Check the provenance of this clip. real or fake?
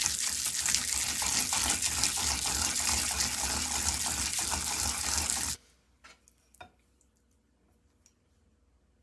real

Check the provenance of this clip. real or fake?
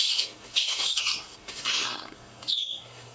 fake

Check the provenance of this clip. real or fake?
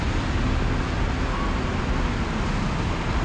real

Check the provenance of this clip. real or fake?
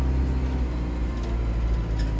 real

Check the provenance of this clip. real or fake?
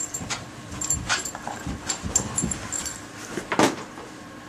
fake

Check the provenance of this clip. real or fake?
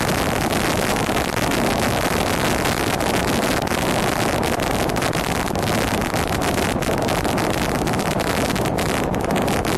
real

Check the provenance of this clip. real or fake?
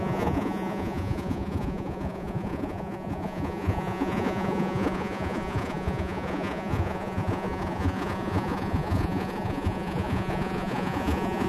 fake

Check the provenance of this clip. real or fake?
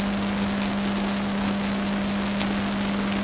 real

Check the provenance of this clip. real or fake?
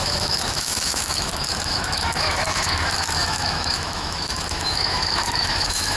fake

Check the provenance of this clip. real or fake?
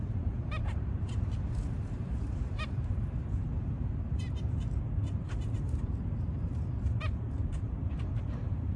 fake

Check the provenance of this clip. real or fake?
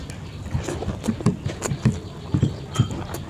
real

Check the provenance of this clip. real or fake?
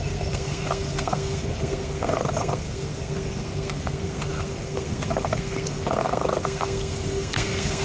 fake